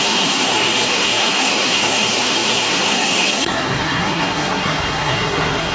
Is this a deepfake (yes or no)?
yes